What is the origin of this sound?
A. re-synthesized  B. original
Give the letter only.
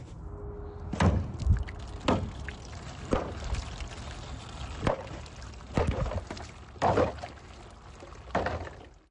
B